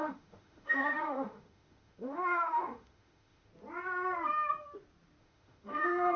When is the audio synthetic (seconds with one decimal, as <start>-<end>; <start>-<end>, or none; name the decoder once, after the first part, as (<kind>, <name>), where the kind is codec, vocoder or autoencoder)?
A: 0.0-3.5 (autoencoder, DAC-VAE); 5.2-6.2